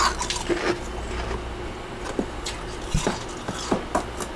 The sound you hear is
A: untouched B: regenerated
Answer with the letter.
A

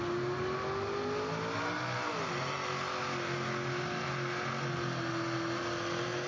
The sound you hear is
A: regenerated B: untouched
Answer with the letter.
B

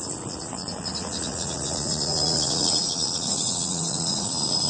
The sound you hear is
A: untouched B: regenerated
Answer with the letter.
B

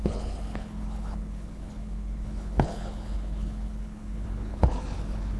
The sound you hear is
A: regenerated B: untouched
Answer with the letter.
A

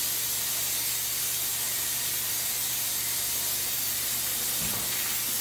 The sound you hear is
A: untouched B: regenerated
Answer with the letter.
A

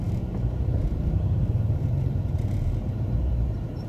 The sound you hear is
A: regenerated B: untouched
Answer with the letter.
A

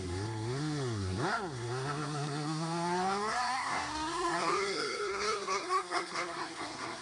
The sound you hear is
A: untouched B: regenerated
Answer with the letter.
B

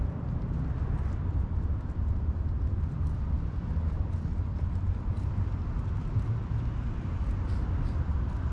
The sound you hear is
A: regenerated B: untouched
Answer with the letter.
A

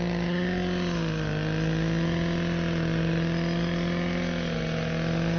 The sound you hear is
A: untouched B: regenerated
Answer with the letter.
A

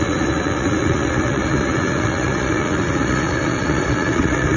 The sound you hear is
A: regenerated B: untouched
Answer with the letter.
A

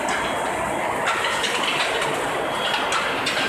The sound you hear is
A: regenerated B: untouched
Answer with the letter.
B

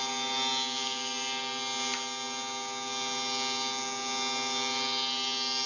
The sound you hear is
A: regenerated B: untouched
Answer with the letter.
B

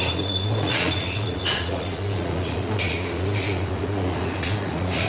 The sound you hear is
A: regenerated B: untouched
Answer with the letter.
A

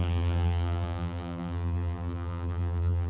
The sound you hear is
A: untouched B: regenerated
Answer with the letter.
B